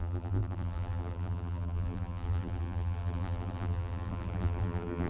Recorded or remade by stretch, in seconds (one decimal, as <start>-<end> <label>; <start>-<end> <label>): 0.0-5.1 remade